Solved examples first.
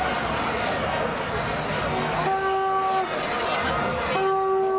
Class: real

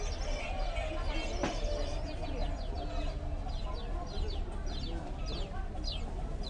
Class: real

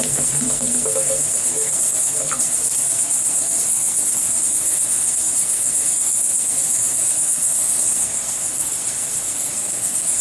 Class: fake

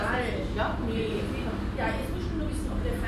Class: real